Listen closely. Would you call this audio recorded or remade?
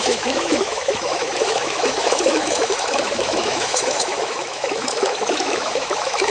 remade